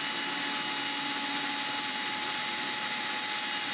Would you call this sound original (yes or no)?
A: yes